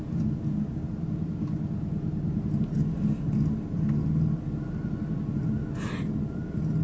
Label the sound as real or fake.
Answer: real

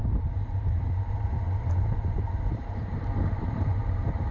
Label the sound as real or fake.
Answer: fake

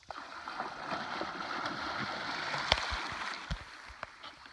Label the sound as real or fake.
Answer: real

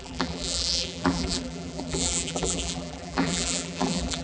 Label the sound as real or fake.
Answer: fake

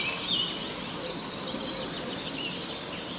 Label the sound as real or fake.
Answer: real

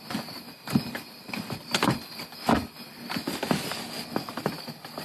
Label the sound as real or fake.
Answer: fake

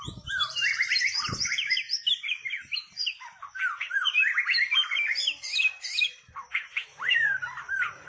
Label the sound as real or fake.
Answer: fake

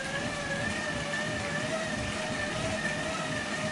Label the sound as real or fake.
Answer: real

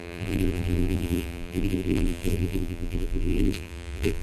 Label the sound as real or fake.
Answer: fake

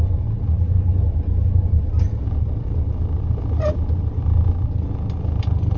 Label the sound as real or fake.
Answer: fake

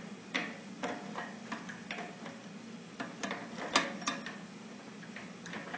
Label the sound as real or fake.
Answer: real